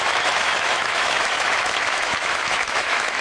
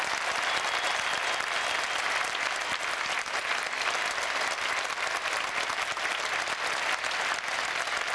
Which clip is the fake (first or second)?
first